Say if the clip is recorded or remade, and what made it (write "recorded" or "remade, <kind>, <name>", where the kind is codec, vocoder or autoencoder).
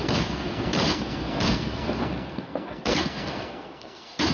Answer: remade, codec, SNAC